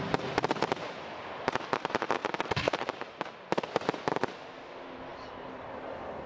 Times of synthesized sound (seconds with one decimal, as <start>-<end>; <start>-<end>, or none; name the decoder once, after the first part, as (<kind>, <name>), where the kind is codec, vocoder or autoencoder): 5.1-6.3 (vocoder, BigVGAN v2)